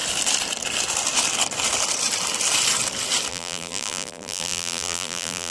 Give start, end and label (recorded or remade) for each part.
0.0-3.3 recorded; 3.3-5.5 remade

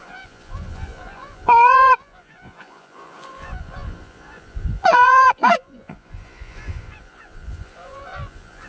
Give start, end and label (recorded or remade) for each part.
0.0-8.7 remade

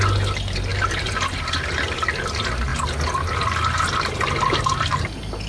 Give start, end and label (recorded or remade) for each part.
0.0-5.5 recorded

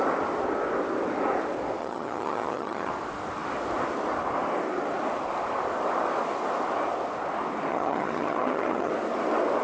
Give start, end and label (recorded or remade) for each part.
0.0-1.8 recorded; 1.8-2.9 remade; 2.9-7.7 recorded; 7.7-8.9 remade; 8.9-9.6 recorded

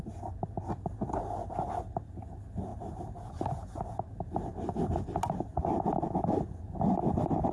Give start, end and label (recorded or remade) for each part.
0.0-7.5 recorded

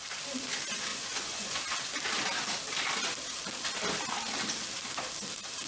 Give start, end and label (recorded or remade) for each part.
0.0-0.9 recorded; 0.9-1.6 remade; 1.6-5.7 recorded